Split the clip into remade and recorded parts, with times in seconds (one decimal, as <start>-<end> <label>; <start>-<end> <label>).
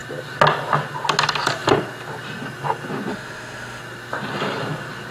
0.0-3.1 recorded; 3.1-3.8 remade; 3.8-5.1 recorded